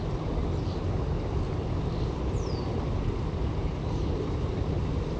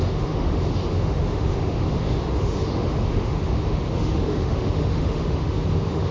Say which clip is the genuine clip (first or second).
first